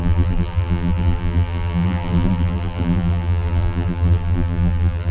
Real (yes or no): no